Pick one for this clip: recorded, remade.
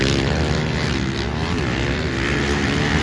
recorded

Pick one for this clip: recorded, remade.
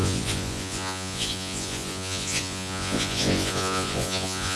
remade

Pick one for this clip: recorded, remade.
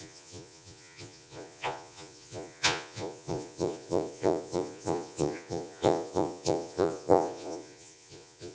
remade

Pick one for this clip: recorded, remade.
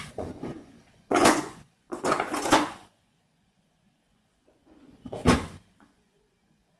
remade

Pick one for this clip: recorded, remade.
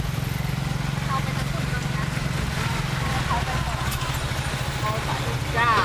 recorded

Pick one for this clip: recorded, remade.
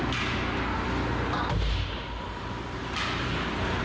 recorded